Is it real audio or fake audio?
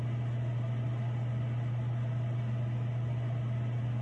real